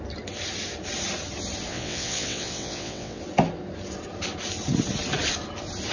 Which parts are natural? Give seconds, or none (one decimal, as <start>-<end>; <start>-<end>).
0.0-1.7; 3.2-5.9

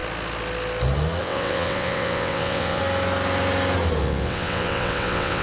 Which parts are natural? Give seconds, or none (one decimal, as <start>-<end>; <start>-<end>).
0.0-1.2; 2.8-4.0

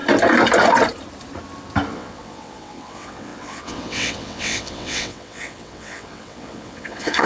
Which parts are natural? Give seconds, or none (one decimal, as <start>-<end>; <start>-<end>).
0.0-1.9